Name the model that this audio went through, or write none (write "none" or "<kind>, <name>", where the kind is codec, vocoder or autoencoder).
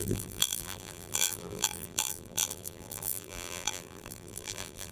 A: vocoder, BigVGAN v2